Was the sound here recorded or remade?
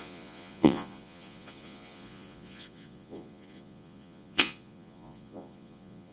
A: remade